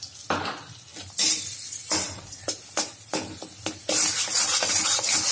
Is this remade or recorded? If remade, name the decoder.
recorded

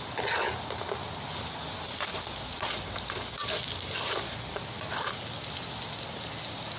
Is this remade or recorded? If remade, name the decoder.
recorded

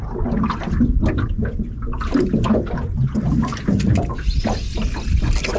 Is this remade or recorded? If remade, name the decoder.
recorded